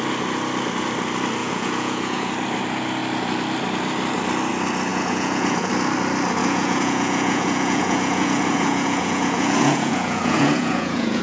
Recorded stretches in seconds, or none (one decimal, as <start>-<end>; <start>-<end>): 0.0-1.4; 2.3-4.9; 5.7-6.4